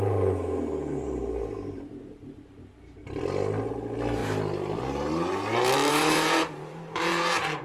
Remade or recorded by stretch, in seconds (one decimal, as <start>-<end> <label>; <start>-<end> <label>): 0.0-3.0 remade; 3.0-3.7 recorded; 3.7-4.2 remade; 4.2-5.9 recorded; 5.9-7.6 remade